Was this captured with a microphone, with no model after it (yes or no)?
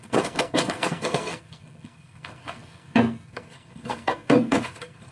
no